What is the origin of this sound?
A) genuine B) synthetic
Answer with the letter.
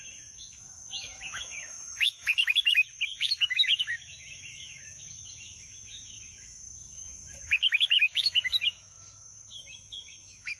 B